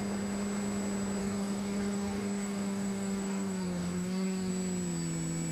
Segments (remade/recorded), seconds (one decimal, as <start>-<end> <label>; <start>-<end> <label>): 0.0-1.2 recorded; 1.2-4.5 remade; 4.5-5.5 recorded